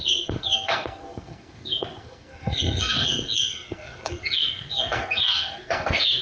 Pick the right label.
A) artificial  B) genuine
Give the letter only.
A